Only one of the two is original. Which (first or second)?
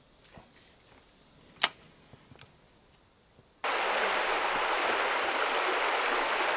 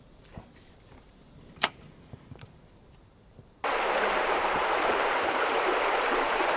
first